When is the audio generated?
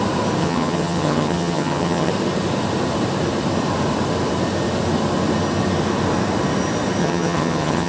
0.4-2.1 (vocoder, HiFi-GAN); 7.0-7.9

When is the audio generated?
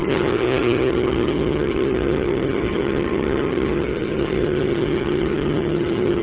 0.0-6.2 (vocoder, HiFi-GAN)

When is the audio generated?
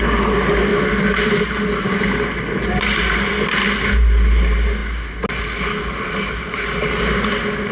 none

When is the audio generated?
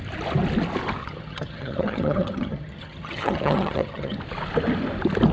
1.0-4.2 (vocoder, HiFi-GAN)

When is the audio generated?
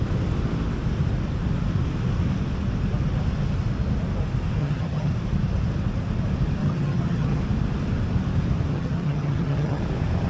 4.6-5.1 (vocoder, HiFi-GAN); 6.6-7.4; 8.7-9.8